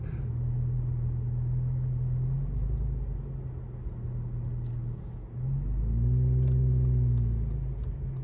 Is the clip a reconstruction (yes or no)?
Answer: no